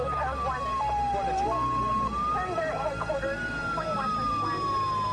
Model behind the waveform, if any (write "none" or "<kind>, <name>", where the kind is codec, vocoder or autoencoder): none